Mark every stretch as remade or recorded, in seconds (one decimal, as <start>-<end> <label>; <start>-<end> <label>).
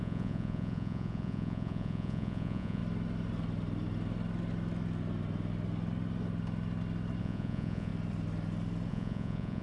0.0-2.8 remade; 2.8-7.2 recorded; 7.2-7.9 remade; 7.9-8.9 recorded; 8.9-9.6 remade